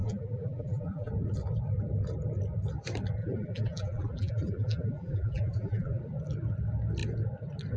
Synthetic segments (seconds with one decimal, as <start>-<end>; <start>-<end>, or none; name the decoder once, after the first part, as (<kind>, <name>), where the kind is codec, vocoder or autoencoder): 0.0-1.1 (vocoder, BigVGAN v2); 3.2-6.0